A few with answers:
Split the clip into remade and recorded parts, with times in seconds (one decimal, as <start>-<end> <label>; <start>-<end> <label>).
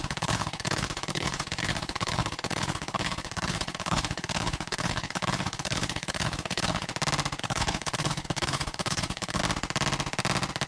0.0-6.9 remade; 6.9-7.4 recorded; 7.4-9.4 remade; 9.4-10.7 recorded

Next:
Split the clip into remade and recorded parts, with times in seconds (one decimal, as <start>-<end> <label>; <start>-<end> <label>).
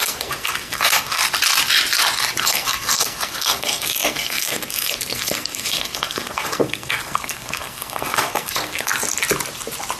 0.0-1.2 remade; 1.2-2.4 recorded; 2.4-8.9 remade; 8.9-10.0 recorded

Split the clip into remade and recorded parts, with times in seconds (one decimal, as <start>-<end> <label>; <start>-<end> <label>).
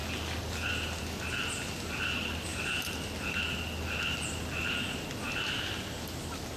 0.0-6.6 recorded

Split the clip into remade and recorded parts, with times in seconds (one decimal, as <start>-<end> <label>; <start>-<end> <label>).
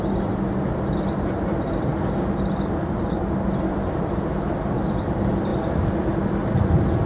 0.0-7.1 recorded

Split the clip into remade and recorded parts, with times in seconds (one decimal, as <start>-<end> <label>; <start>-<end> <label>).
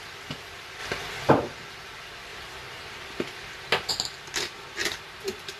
0.0-5.6 recorded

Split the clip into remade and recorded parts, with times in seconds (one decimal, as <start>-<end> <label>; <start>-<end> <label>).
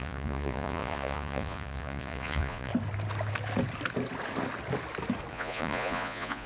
0.0-2.7 remade; 2.7-5.3 recorded; 5.3-6.5 remade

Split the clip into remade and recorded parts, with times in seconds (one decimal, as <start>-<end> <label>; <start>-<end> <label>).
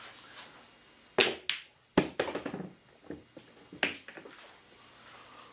0.0-5.5 recorded